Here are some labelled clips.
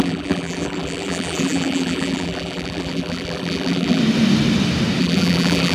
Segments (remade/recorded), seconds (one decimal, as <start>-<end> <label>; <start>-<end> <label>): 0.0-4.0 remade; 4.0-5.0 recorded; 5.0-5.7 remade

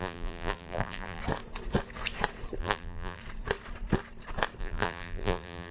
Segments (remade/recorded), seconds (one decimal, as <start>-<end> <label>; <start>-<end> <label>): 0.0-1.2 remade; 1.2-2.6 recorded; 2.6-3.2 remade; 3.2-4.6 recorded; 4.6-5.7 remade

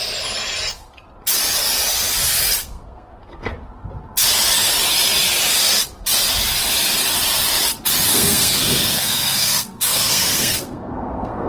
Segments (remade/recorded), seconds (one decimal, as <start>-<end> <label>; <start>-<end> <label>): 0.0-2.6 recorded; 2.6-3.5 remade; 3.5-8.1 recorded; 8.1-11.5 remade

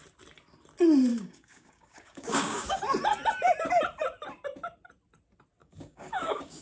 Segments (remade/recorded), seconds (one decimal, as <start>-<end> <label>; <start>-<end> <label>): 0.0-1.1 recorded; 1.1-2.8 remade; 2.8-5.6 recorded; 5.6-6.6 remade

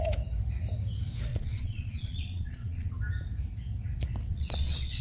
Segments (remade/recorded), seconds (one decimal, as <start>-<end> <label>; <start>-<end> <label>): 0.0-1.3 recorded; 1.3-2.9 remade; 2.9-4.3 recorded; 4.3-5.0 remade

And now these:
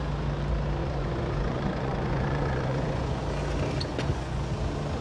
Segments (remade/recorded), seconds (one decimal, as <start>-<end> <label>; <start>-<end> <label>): 0.0-0.8 recorded; 0.8-3.2 remade; 3.2-3.9 recorded; 3.9-4.5 remade; 4.5-5.0 recorded

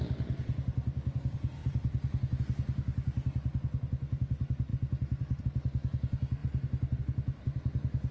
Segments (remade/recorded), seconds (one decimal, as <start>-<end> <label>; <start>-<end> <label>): 0.0-8.1 recorded

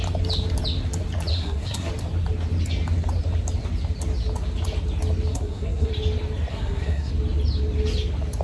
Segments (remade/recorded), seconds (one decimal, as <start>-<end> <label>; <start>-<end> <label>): 0.0-1.3 recorded; 1.3-1.9 remade; 1.9-5.3 recorded; 5.3-5.9 remade; 5.9-6.5 recorded; 6.5-7.1 remade; 7.1-8.4 recorded